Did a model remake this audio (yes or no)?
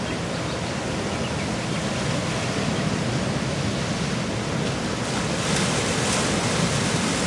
no